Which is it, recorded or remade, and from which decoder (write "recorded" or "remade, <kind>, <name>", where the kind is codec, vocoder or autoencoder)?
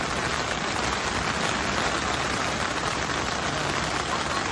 recorded